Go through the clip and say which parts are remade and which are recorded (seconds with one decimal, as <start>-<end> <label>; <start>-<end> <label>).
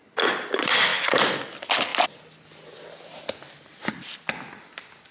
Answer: 0.0-0.9 recorded; 0.9-1.4 remade; 1.4-5.1 recorded